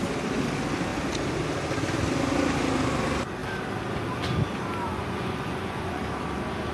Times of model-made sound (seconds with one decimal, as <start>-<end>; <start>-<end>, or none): 4.9-6.0